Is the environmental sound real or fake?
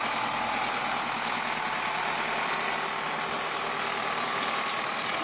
real